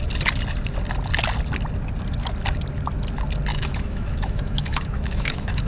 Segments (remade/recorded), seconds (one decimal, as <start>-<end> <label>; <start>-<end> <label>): 0.0-3.5 recorded; 3.5-5.7 remade